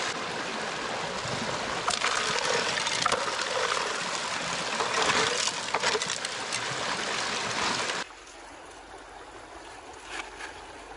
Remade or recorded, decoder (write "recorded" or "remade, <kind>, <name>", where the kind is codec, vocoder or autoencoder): recorded